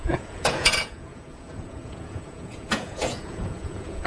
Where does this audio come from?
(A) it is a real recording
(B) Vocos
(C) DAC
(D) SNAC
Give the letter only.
B